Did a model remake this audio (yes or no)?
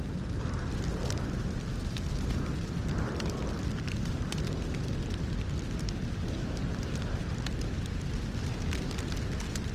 no